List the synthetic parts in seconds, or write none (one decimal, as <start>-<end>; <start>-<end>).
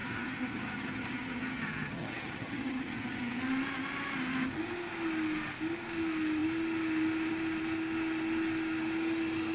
0.0-3.4